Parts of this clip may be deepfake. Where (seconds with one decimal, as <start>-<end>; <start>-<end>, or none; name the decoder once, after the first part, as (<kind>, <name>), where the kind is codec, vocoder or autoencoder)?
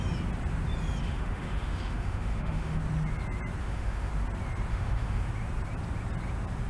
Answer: 1.0-2.8 (autoencoder, DAC-VAE); 3.6-4.1; 4.7-5.3